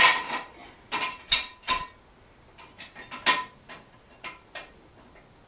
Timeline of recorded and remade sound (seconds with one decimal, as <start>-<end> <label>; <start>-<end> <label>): 0.0-5.5 recorded